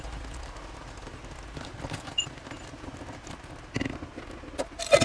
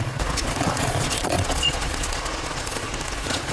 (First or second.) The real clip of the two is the first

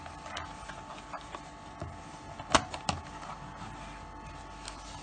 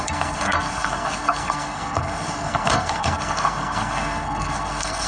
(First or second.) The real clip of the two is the first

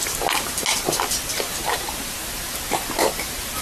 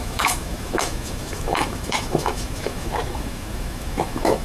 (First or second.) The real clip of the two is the first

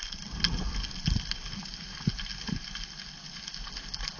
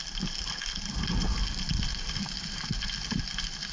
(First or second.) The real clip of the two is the first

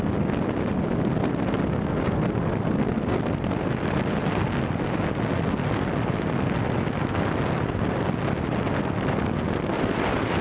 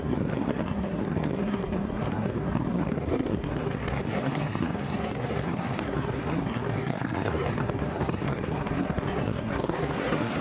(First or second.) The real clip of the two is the first